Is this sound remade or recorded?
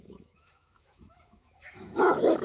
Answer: remade